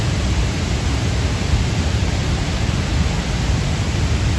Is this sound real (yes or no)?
yes